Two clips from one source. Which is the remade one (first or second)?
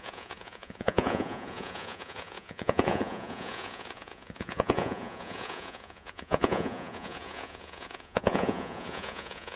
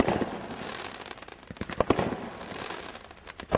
first